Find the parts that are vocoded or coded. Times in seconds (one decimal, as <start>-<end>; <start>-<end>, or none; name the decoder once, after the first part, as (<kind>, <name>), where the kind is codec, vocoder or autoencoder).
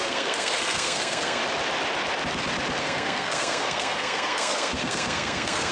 0.0-1.4 (codec, SNAC); 2.8-5.7